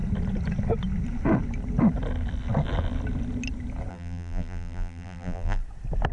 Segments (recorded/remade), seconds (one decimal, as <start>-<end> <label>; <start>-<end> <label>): 0.0-3.9 recorded; 3.9-5.6 remade; 5.6-6.1 recorded